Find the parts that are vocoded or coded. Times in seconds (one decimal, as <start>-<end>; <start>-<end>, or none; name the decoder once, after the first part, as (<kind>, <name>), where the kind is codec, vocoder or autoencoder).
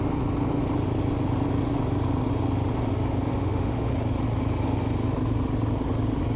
3.3-3.9 (autoencoder, DAC-VAE)